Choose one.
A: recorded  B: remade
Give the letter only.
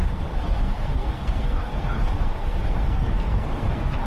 B